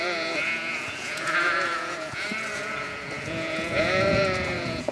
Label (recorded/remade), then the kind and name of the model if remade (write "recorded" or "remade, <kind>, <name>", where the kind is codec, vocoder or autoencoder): remade, vocoder, Vocos